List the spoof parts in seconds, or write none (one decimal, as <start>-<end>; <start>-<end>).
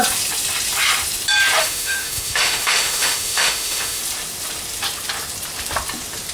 1.6-4.0